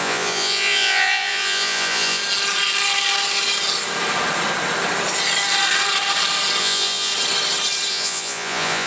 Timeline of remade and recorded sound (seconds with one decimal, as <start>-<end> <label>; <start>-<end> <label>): 0.0-2.2 remade; 2.2-6.6 recorded; 6.6-7.1 remade; 7.1-7.9 recorded; 7.9-8.9 remade